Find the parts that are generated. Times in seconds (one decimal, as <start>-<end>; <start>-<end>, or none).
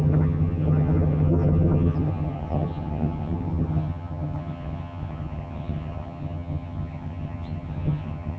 0.0-8.4